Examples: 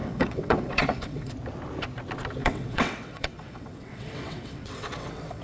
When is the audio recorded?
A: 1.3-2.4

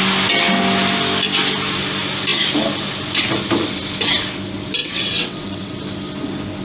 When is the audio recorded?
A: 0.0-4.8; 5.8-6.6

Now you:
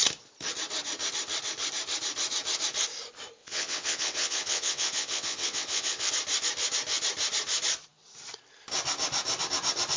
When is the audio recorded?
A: 0.0-3.4; 6.1-10.0